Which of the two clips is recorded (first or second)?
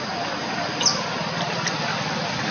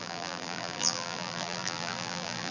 first